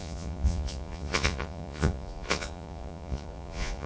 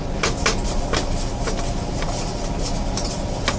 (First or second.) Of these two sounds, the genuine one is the second